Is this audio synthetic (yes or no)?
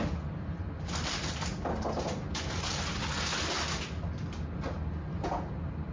no